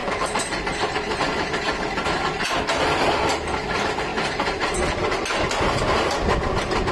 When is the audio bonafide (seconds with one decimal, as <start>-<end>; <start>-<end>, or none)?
2.6-4.1; 4.8-6.9